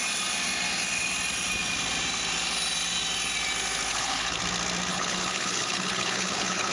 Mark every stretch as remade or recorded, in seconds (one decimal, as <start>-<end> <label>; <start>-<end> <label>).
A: 0.0-3.9 recorded; 3.9-4.4 remade; 4.4-4.9 recorded; 4.9-6.7 remade